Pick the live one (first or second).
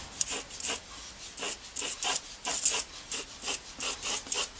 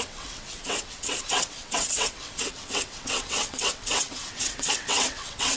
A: first